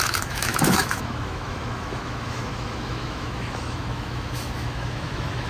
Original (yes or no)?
no